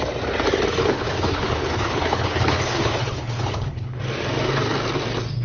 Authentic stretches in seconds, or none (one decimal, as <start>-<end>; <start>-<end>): 0.0-0.8; 4.0-5.4